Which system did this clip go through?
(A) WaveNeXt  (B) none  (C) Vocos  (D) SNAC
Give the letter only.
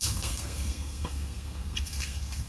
D